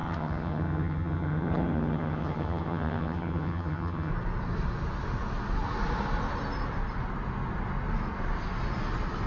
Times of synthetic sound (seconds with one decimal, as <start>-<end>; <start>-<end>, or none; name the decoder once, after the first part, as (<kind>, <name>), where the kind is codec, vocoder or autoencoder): 0.0-4.1 (vocoder, HiFi-GAN)